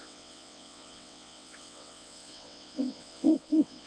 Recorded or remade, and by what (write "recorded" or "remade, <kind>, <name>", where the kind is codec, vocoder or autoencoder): remade, vocoder, WaveNeXt